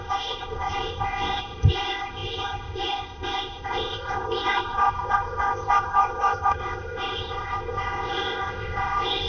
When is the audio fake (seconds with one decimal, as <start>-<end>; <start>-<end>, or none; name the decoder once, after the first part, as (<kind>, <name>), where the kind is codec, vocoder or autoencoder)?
0.0-9.3 (codec, ZipCodec)